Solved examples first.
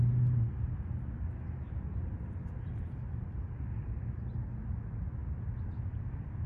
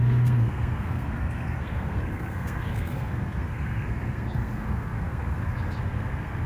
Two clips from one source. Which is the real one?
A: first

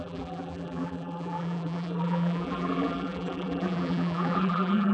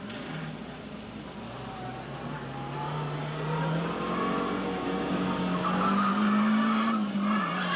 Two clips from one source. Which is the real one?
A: second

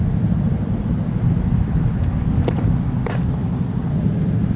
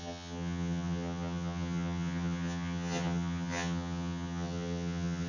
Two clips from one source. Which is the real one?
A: first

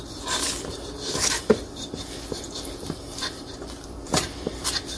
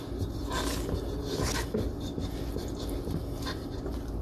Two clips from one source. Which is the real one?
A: second